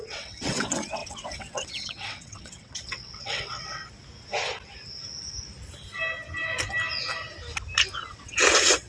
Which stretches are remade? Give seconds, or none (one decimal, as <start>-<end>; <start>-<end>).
0.0-3.8; 8.1-8.9